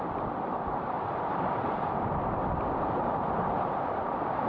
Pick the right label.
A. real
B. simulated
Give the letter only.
B